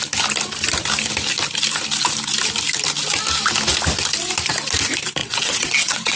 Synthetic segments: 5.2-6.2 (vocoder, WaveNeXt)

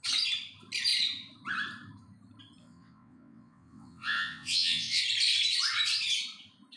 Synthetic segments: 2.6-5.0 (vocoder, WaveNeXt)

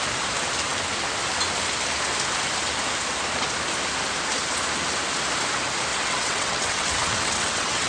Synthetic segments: 5.9-7.9 (vocoder, WaveNeXt)